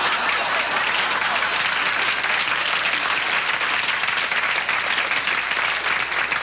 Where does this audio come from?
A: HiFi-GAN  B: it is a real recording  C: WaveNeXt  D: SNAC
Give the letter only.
B